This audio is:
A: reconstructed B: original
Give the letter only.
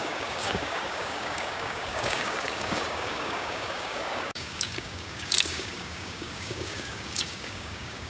A